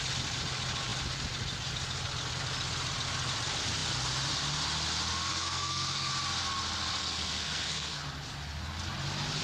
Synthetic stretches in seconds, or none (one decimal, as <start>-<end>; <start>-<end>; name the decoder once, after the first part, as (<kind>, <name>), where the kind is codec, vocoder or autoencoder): 5.3-6.1 (codec, SNAC); 7.0-8.0